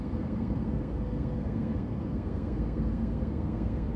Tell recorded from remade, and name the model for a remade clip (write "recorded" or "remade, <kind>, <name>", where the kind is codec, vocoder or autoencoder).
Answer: remade, codec, SNAC